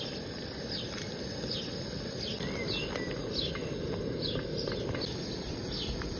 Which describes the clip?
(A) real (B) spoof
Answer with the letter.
A